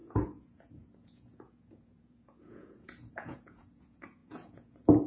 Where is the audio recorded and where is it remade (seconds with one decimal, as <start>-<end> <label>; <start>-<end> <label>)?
0.0-5.1 remade